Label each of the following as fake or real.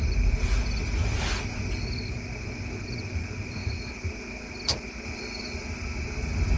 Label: real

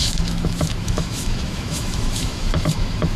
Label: fake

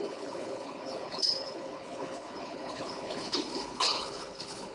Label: fake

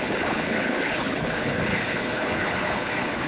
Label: fake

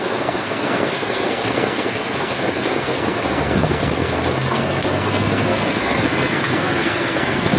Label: fake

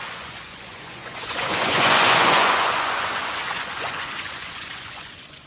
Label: fake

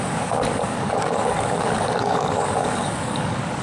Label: fake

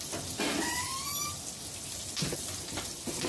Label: real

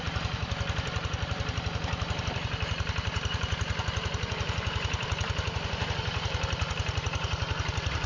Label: fake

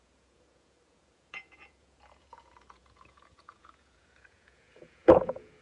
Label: fake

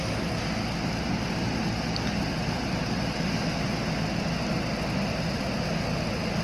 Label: real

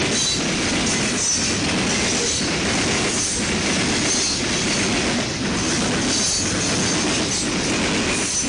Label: real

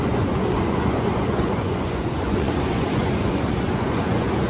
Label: fake